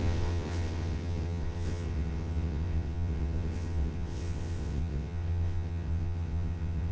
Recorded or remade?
remade